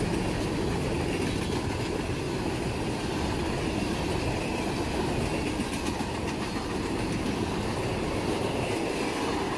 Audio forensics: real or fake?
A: real